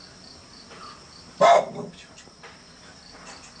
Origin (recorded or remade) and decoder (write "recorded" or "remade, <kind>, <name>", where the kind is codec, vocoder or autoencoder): recorded